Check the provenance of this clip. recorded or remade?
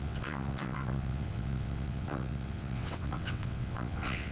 remade